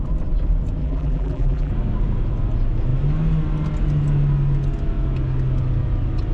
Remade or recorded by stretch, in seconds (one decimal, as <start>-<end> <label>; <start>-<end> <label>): 0.0-0.8 recorded; 0.8-1.7 remade; 1.7-6.3 recorded